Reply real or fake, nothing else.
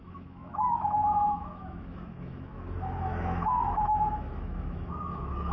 fake